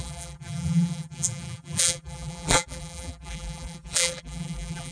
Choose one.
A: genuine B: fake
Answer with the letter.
B